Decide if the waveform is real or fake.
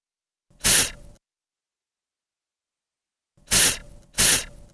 real